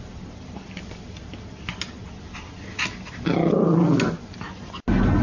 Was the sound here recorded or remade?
recorded